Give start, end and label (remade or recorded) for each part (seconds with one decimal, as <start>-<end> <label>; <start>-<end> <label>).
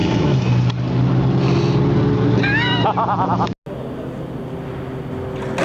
0.0-0.5 remade; 0.5-5.6 recorded